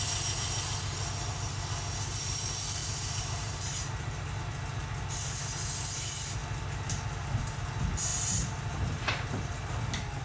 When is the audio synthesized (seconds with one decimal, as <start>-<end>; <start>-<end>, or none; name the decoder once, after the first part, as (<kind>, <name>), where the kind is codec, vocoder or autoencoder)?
2.8-4.4 (vocoder, BigVGAN v2)